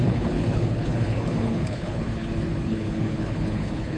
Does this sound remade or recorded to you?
remade